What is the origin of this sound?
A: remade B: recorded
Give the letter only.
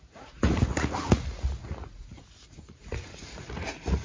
A